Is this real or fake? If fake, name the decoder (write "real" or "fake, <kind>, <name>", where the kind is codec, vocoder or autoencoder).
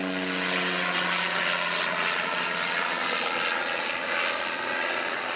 real